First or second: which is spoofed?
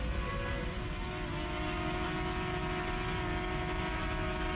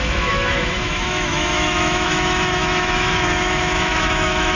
second